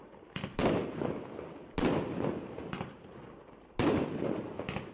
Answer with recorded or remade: recorded